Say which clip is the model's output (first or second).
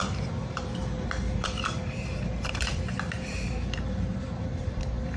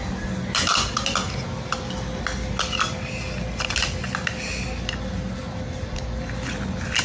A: first